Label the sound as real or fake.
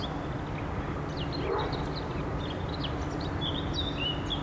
real